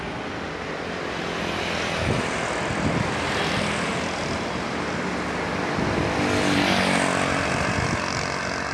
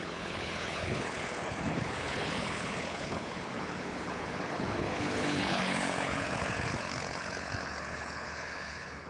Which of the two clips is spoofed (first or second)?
second